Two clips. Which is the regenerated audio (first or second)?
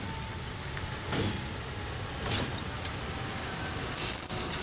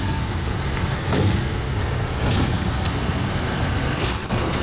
second